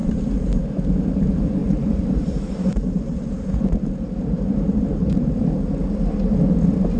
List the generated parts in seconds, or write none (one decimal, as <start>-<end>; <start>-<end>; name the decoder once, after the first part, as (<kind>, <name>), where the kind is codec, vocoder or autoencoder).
0.0-0.6 (vocoder, BigVGAN v2); 1.6-5.3